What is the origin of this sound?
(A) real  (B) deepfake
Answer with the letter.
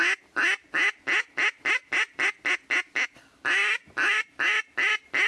A